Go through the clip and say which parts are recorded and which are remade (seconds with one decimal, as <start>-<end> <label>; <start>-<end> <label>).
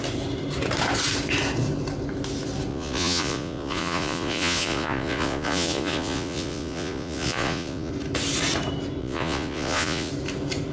0.0-2.7 recorded; 2.7-7.9 remade; 7.9-9.0 recorded; 9.0-10.1 remade; 10.1-10.7 recorded